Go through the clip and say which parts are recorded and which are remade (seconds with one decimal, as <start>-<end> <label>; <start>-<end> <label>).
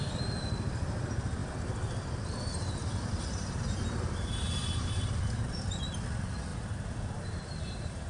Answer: 0.0-2.8 recorded; 2.8-5.6 remade; 5.6-6.5 recorded; 6.5-8.1 remade